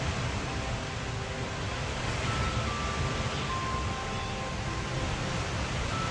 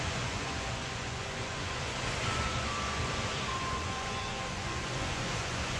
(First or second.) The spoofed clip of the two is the second